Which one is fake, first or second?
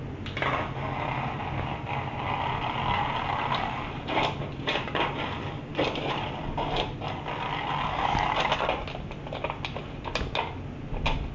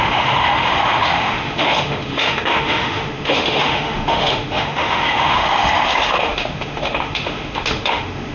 second